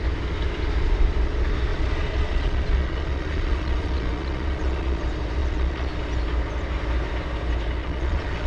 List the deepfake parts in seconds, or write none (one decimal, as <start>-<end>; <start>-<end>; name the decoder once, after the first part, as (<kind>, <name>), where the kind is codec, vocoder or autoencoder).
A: 1.7-5.0 (vocoder, Vocos); 5.4-5.9; 7.8-8.5

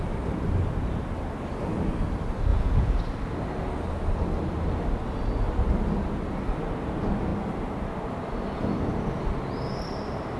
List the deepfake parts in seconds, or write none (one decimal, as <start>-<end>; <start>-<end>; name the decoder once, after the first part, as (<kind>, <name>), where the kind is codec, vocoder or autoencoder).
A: 2.5-3.0 (vocoder, Vocos)

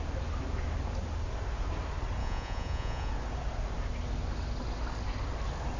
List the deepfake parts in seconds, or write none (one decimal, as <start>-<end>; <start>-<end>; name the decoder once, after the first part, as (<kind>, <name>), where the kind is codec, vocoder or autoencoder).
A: 2.2-3.1 (vocoder, Vocos)